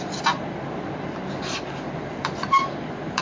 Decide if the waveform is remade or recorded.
remade